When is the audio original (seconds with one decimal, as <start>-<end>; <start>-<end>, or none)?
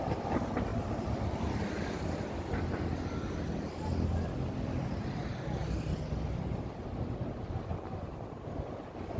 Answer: 0.0-9.2